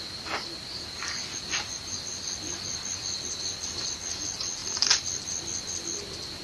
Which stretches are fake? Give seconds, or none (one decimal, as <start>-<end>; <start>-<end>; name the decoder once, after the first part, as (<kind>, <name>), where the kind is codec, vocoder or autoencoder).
none

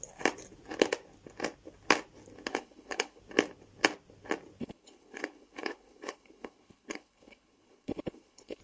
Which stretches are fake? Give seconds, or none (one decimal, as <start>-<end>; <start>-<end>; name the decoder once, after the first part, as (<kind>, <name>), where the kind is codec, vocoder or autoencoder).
2.5-3.2 (codec, HILCodec); 4.6-8.6

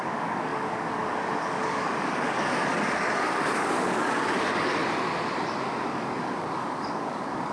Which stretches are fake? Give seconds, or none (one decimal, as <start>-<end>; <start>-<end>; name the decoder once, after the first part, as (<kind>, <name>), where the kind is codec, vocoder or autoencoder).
0.0-4.8 (codec, DAC); 5.6-7.5

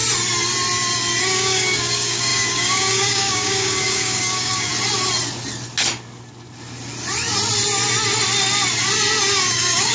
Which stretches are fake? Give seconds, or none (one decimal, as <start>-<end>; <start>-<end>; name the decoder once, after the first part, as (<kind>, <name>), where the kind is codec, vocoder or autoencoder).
1.2-4.7 (codec, DAC); 9.5-9.9

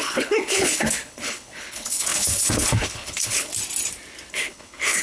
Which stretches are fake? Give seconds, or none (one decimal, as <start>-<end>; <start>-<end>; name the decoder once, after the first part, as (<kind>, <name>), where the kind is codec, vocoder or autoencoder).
0.0-3.5 (codec, HILCodec); 4.3-5.0

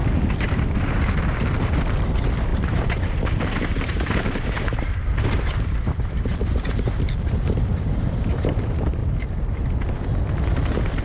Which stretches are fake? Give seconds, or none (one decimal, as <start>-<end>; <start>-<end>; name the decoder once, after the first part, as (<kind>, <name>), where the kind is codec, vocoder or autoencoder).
1.2-9.0 (vocoder, BigVGAN v2)

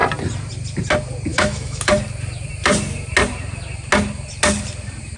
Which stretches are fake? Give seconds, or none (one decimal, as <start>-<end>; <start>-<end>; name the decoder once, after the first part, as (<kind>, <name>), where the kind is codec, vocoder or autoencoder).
1.3-1.9 (autoencoder, DAC-VAE)